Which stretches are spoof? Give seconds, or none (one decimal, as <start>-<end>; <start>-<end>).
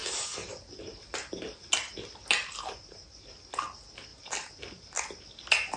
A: 0.0-1.4